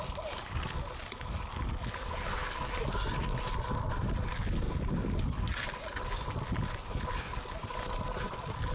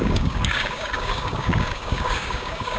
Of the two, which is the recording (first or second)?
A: first